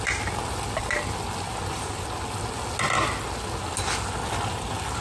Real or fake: real